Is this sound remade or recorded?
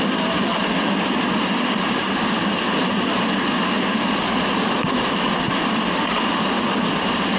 recorded